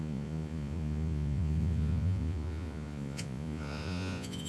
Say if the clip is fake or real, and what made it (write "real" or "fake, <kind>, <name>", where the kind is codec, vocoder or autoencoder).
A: fake, vocoder, Vocos